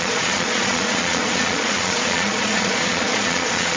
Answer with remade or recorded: remade